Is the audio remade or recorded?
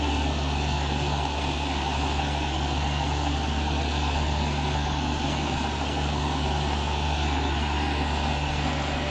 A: remade